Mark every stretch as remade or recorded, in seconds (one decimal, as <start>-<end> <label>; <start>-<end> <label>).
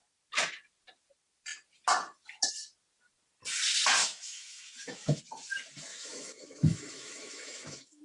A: 0.0-4.0 recorded; 4.0-5.2 remade; 5.2-5.9 recorded; 5.9-8.0 remade